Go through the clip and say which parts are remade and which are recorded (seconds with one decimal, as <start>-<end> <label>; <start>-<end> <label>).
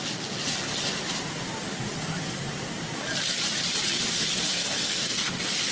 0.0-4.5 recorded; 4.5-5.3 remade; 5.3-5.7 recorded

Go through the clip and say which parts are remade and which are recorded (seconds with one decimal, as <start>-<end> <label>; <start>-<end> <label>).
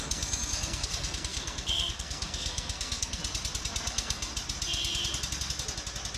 0.0-3.2 remade; 3.2-3.9 recorded; 3.9-4.3 remade; 4.3-6.2 recorded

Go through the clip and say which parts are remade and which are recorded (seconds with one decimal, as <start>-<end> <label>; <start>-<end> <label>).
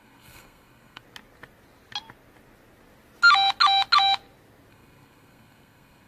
0.0-1.0 remade; 1.0-4.7 recorded; 4.7-6.1 remade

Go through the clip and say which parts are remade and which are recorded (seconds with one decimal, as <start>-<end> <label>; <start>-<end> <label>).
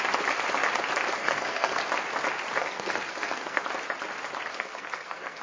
0.0-1.2 recorded; 1.2-1.8 remade; 1.8-2.6 recorded; 2.6-3.6 remade; 3.6-4.5 recorded; 4.5-5.4 remade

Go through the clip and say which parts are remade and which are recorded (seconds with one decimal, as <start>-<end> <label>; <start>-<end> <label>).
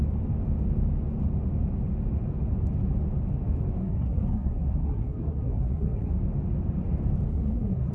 0.0-3.8 recorded; 3.8-6.1 remade; 6.1-7.3 recorded; 7.3-7.9 remade